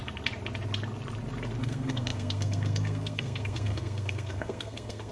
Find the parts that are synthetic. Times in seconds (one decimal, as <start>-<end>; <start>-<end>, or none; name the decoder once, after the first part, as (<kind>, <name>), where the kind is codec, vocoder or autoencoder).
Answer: 1.6-5.1 (codec, SNAC)